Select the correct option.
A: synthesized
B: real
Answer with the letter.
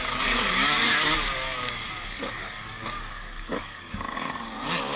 A